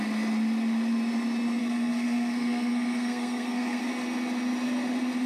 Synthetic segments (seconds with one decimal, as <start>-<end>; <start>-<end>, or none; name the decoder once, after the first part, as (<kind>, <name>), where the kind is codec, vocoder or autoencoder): 1.6-3.9 (codec, SNAC)